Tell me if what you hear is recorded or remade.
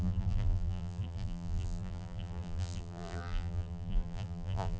remade